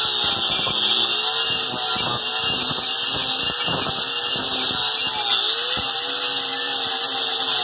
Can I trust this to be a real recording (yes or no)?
yes